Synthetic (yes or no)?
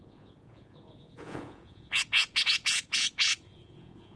yes